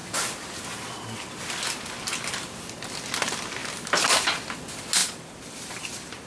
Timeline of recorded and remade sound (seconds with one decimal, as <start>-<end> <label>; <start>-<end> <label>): 0.0-5.0 recorded; 5.0-6.3 remade